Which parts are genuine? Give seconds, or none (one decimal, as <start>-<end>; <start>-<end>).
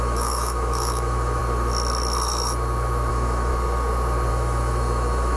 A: 1.4-3.1; 3.5-4.3